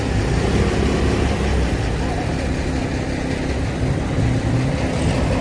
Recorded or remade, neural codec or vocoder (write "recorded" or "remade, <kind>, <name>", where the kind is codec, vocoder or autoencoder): recorded